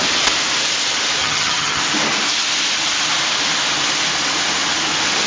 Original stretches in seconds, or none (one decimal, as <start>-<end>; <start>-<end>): 0.0-1.2; 1.8-5.3